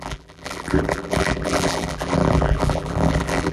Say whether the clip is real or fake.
fake